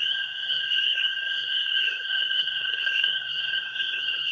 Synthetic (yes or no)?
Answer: yes